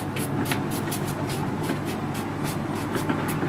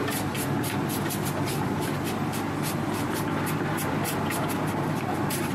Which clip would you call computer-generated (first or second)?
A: second